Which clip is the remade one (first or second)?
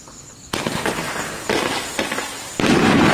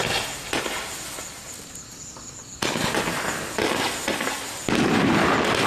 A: first